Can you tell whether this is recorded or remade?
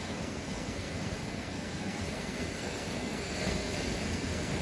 remade